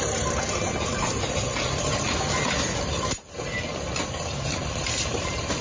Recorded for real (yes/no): no